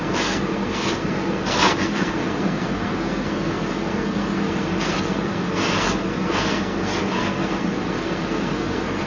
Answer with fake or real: fake